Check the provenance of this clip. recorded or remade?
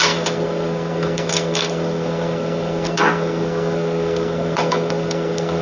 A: remade